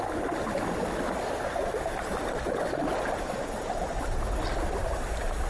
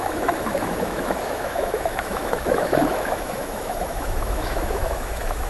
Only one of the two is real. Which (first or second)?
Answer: first